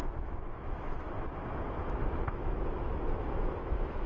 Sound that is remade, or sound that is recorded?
remade